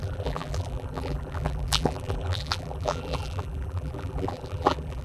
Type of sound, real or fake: fake